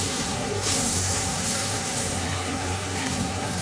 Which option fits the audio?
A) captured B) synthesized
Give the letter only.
B